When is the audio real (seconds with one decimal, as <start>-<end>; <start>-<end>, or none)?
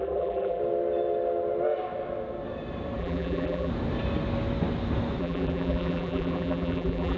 0.6-3.0; 3.7-5.2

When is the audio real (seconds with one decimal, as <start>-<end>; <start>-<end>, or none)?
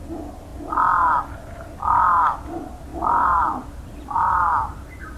0.0-2.9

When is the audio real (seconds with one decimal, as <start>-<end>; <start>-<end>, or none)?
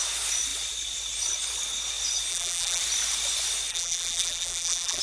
0.0-2.3; 2.8-3.7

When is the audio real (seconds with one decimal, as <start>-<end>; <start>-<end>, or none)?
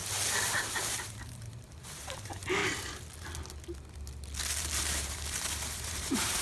0.0-0.7; 2.6-4.4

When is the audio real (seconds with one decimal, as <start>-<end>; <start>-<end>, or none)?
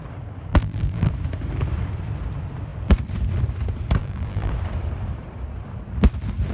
0.0-0.5; 1.1-4.0; 4.5-6.5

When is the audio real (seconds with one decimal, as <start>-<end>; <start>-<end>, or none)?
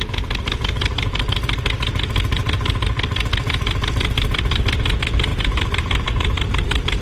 0.0-5.3; 6.1-7.0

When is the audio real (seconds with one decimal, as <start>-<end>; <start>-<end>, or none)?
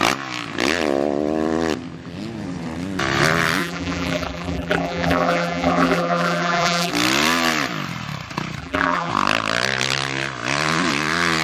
0.0-3.6; 6.9-8.6; 9.1-11.4